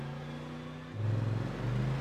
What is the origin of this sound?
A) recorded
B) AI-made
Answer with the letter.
A